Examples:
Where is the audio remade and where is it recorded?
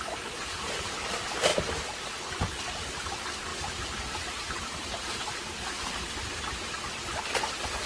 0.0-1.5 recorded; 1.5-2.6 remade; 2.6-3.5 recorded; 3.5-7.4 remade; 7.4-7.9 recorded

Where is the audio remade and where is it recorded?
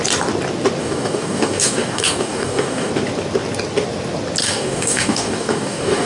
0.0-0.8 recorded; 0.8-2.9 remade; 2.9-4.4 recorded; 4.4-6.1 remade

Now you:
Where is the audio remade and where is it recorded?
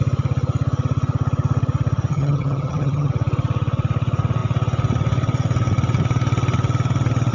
0.0-2.1 recorded; 2.1-3.1 remade; 3.1-7.3 recorded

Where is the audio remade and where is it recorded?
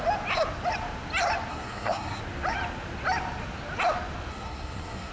0.0-1.5 recorded; 1.5-2.2 remade; 2.2-4.3 recorded; 4.3-5.1 remade